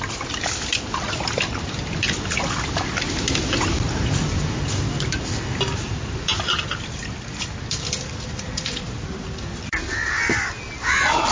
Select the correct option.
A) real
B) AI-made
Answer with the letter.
A